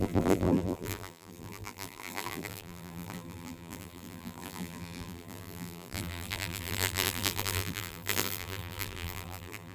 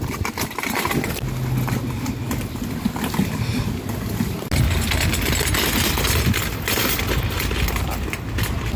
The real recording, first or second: second